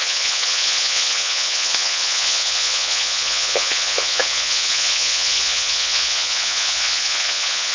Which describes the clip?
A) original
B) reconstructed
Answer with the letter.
B